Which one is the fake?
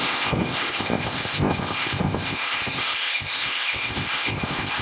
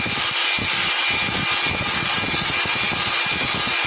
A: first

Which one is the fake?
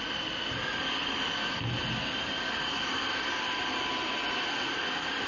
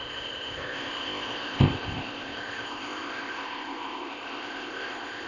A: second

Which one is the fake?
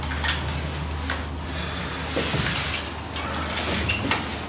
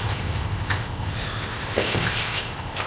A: second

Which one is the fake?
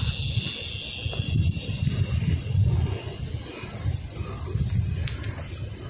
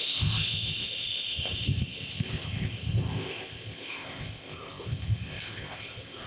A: second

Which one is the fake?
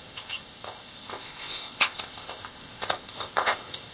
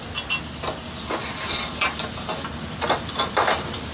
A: first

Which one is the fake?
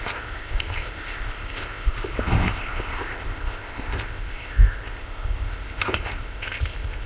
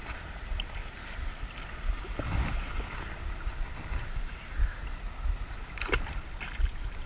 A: first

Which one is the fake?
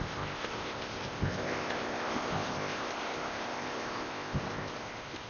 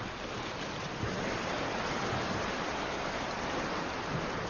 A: first